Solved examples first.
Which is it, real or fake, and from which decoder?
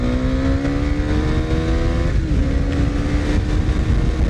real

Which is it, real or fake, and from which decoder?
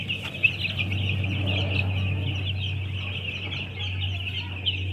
real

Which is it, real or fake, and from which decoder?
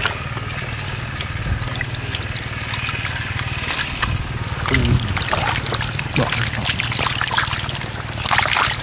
real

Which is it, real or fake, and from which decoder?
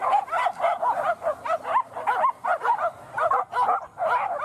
real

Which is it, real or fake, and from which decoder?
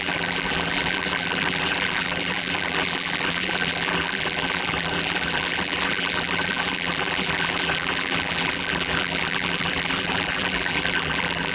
fake, vocoder, BigVGAN v2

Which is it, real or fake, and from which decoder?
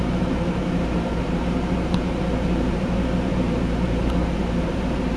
fake, vocoder, BigVGAN v2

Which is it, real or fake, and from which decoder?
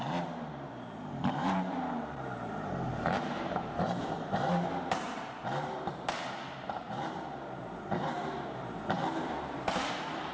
fake, vocoder, BigVGAN v2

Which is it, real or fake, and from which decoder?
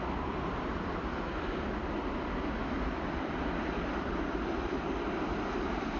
fake, vocoder, BigVGAN v2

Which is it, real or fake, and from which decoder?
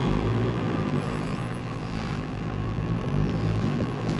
fake, vocoder, BigVGAN v2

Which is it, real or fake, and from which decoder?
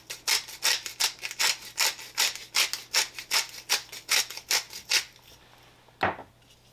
real